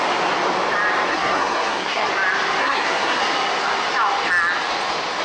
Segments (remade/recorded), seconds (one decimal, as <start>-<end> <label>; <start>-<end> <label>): 0.0-1.1 recorded; 1.1-2.1 remade; 2.1-2.6 recorded; 2.6-3.2 remade; 3.2-5.2 recorded